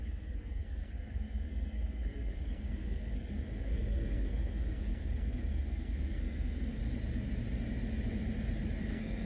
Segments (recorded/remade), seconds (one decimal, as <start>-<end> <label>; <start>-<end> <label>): 0.0-6.8 remade; 6.8-8.8 recorded; 8.8-9.3 remade